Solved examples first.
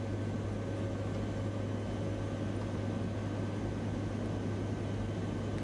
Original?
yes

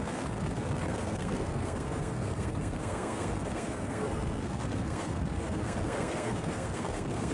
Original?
no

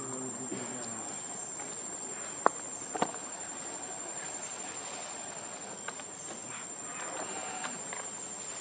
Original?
yes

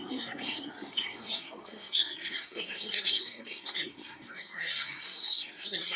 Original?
no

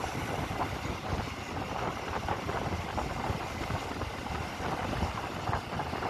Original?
yes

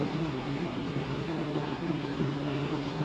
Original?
no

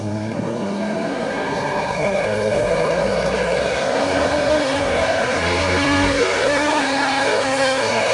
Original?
no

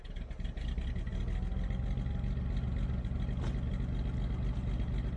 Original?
yes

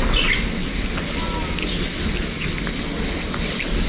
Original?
yes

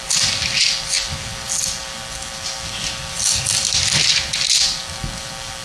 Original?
yes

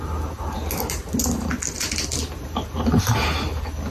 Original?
yes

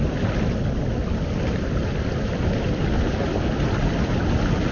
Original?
yes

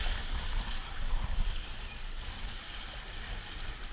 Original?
yes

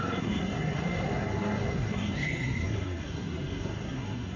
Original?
no